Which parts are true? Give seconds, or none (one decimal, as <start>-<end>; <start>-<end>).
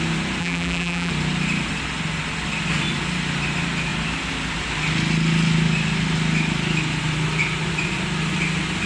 0.0-0.4; 1.1-8.9